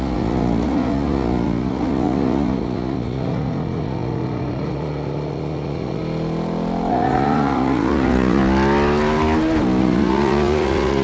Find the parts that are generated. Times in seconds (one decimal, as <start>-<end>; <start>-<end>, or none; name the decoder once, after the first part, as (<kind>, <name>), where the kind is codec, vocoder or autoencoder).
0.0-6.0 (vocoder, Vocos); 6.9-8.4; 9.8-11.0